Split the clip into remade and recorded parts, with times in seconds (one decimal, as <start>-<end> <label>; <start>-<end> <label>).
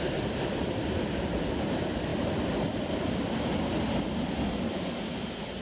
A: 0.0-5.6 recorded